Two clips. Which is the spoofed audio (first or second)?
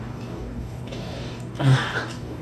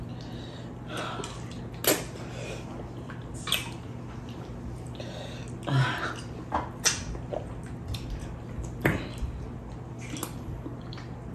first